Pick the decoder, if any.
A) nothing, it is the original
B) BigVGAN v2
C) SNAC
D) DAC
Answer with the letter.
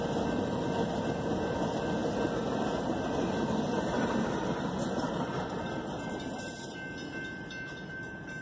A